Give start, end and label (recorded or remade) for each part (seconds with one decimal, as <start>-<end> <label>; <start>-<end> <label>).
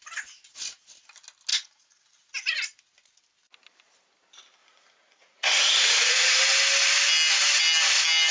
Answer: 0.0-1.5 recorded; 1.5-2.3 remade; 2.3-4.6 recorded; 4.6-6.4 remade; 6.4-8.3 recorded